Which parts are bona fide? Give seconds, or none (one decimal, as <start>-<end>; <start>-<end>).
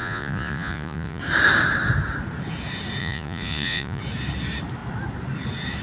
1.2-3.0; 4.0-5.8